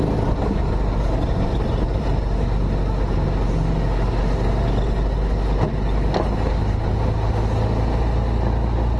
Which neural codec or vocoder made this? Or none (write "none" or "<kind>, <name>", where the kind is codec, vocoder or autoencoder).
none